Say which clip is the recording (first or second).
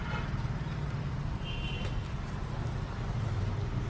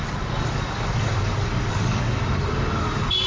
first